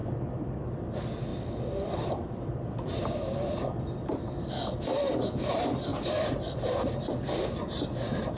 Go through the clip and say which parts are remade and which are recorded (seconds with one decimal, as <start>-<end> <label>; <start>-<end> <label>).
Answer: 0.0-0.8 remade; 0.8-1.3 recorded; 1.3-4.5 remade; 4.5-5.9 recorded; 5.9-8.4 remade